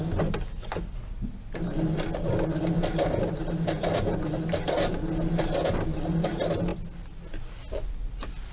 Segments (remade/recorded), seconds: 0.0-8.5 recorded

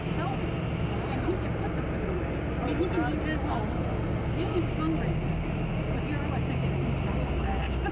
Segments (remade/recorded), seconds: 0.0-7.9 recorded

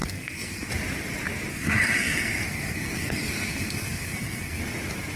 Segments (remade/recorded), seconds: 0.0-0.7 remade; 0.7-1.5 recorded; 1.5-4.6 remade; 4.6-5.2 recorded

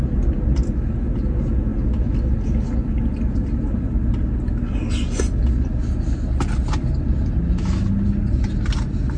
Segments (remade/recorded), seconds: 0.0-9.2 recorded

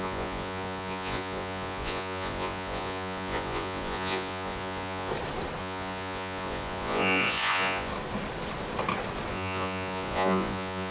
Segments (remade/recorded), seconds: 0.0-5.1 remade; 5.1-5.6 recorded; 5.6-7.9 remade; 7.9-9.3 recorded; 9.3-10.9 remade

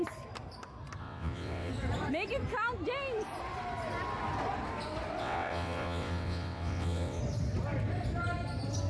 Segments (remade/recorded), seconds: 0.0-1.0 recorded; 1.0-1.7 remade; 1.7-5.2 recorded; 5.2-7.2 remade; 7.2-8.9 recorded

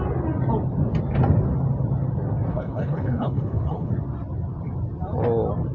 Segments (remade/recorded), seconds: 0.0-2.5 recorded; 2.5-3.9 remade; 3.9-5.7 recorded

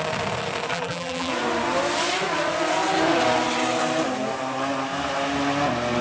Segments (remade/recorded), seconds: 0.0-0.7 recorded; 0.7-1.3 remade; 1.3-6.0 recorded